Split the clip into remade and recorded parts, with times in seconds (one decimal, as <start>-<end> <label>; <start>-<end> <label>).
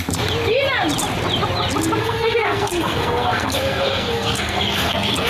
0.0-2.0 recorded; 2.0-5.3 remade